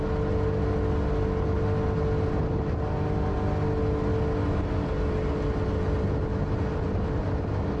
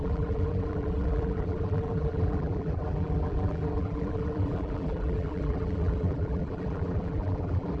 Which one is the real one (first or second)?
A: first